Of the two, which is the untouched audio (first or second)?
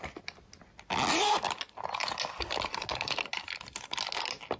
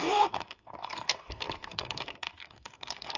first